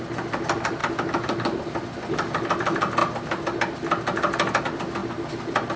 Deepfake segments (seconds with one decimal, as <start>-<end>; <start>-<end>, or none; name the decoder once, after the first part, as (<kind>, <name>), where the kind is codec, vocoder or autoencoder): none